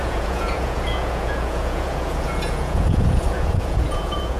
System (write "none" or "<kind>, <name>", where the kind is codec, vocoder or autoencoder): vocoder, Vocos